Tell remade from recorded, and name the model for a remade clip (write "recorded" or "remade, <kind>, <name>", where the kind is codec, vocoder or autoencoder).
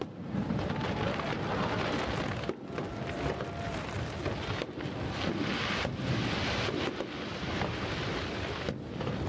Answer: recorded